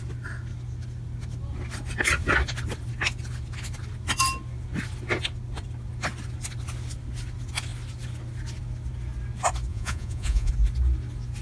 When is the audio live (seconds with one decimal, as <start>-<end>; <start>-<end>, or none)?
0.0-9.7; 10.5-11.4